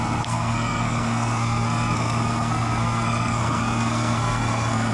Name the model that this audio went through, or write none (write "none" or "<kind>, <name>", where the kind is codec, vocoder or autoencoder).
codec, SNAC